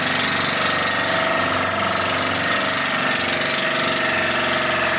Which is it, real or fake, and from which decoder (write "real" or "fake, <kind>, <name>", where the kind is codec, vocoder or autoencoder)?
real